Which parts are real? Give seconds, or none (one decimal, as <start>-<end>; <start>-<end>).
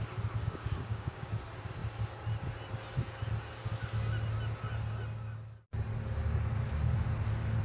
0.0-0.4; 1.3-7.6